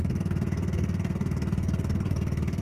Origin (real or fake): fake